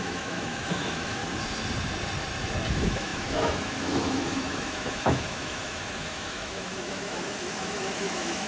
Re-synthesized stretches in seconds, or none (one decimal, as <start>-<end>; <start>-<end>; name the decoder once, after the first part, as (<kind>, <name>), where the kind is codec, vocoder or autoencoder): 0.0-1.2 (autoencoder, DAC-VAE); 2.7-8.5